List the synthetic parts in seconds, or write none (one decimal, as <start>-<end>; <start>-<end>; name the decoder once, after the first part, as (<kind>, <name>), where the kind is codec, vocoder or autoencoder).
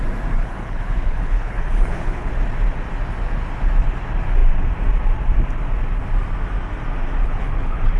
0.4-2.3 (codec, HILCodec); 7.2-8.0